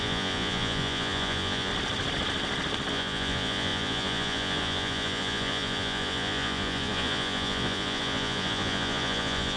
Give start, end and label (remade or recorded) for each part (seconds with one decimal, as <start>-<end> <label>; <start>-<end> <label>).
0.0-1.7 remade; 1.7-2.9 recorded; 2.9-9.6 remade